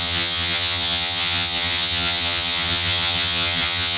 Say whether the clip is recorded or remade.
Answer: remade